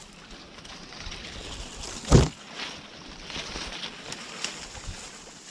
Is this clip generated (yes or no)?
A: no